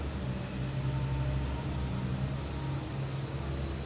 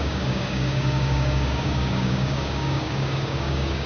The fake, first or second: second